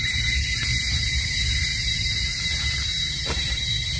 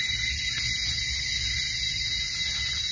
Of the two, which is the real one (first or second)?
second